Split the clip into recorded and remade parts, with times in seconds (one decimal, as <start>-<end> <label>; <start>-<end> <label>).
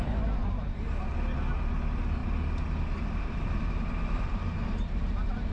0.0-5.5 recorded